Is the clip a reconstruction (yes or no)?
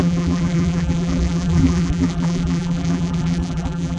yes